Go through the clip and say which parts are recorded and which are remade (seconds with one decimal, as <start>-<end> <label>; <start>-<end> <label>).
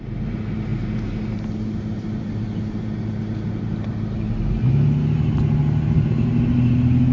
0.0-7.1 recorded